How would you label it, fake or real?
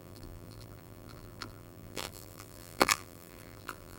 fake